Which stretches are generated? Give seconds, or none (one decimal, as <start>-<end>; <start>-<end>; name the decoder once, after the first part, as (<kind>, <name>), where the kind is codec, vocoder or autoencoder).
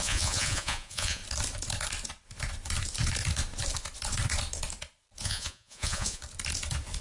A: 0.0-1.2 (vocoder, Vocos); 5.2-6.2